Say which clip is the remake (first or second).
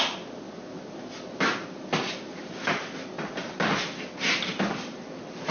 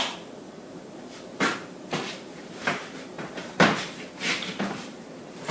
second